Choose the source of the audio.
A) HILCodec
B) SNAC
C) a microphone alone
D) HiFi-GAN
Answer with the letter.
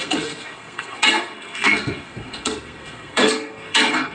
B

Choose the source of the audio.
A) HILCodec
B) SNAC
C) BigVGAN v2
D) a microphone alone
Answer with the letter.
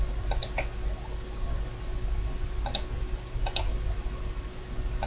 D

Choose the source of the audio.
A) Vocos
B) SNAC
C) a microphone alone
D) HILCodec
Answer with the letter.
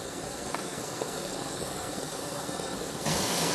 B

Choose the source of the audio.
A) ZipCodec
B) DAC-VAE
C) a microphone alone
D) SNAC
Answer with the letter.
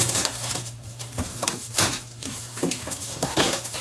D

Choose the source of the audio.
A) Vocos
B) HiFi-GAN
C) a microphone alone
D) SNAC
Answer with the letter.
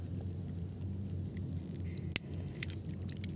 C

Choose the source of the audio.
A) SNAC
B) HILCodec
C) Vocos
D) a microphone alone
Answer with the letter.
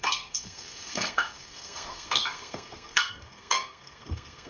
A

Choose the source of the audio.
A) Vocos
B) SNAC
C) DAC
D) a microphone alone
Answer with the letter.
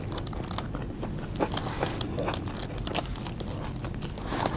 D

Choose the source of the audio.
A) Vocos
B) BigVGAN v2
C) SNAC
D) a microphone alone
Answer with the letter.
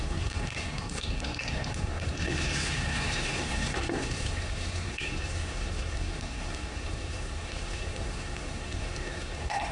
C